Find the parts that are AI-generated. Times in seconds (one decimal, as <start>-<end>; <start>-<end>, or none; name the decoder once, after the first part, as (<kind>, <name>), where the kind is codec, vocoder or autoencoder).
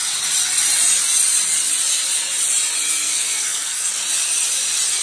3.0-3.9 (codec, SNAC)